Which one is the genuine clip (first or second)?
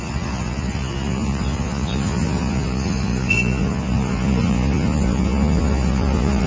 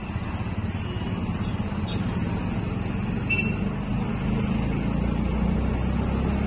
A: second